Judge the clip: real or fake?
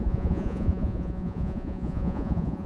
fake